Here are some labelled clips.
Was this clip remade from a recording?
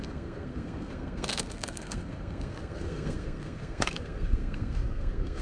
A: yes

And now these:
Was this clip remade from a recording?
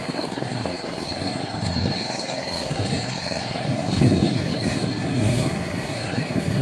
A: yes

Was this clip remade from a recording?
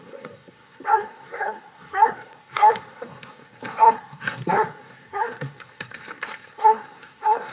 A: yes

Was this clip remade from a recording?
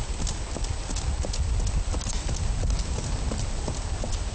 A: no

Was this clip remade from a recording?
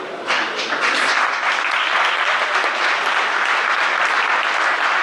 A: no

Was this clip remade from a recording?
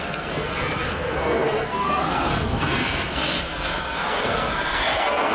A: yes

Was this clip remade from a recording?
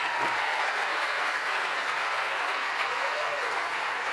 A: yes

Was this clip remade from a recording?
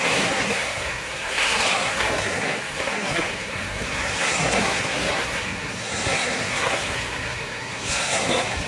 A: yes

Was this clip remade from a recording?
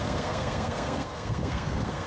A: yes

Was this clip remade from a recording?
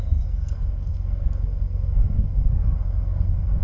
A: yes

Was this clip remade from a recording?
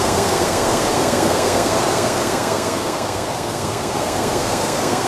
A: yes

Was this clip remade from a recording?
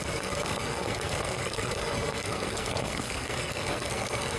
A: yes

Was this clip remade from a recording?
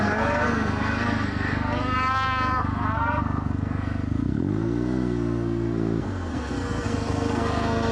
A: yes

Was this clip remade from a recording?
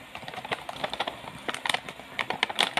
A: no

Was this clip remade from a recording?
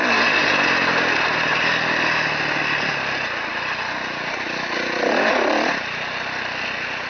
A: no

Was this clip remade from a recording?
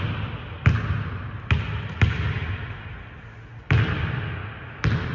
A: no